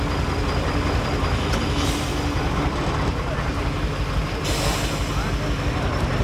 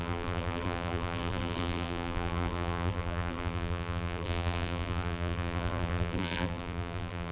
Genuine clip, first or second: first